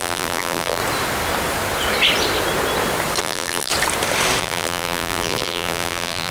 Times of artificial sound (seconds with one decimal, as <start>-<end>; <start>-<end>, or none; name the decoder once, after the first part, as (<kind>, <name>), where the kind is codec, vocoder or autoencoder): 0.0-0.8 (vocoder, BigVGAN v2); 3.2-3.7; 4.4-6.3